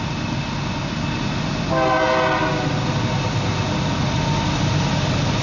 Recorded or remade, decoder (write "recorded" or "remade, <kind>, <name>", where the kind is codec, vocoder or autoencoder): recorded